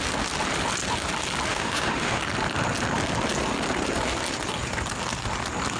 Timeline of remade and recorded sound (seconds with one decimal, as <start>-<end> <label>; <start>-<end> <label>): 0.0-1.5 recorded; 1.5-2.2 remade; 2.2-5.8 recorded

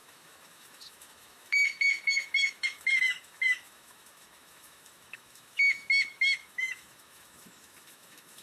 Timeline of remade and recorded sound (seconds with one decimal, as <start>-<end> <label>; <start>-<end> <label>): 0.0-8.4 remade

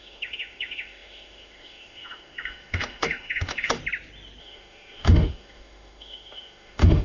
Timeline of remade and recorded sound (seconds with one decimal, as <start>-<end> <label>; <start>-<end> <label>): 0.0-3.8 remade; 3.8-4.4 recorded; 4.4-7.0 remade